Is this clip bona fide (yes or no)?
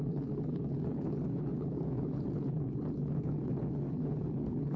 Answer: no